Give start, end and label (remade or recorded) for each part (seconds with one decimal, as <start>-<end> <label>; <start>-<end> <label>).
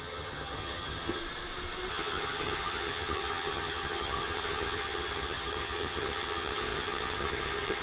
0.0-1.2 remade; 1.2-1.9 recorded; 1.9-7.8 remade